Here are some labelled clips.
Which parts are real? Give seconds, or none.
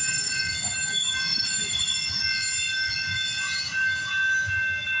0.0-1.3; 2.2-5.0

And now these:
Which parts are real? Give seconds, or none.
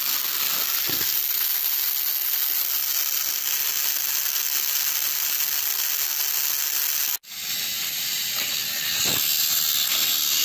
0.0-10.4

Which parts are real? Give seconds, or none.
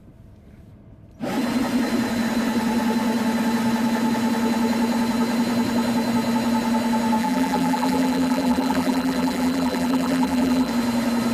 0.0-7.2; 10.7-11.3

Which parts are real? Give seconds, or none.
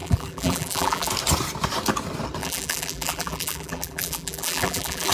1.1-2.4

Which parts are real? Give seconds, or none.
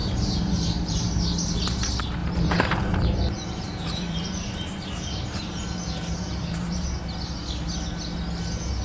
1.2-2.2; 7.0-8.8